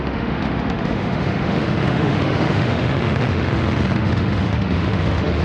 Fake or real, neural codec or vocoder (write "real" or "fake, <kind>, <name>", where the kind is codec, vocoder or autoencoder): fake, autoencoder, DAC-VAE